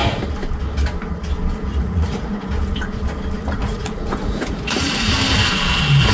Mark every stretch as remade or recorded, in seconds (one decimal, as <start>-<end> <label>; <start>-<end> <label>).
0.0-1.7 recorded; 1.7-2.5 remade; 2.5-3.6 recorded; 3.6-5.1 remade; 5.1-6.1 recorded